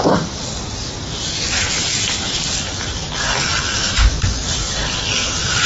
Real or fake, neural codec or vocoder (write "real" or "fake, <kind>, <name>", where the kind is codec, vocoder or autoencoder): real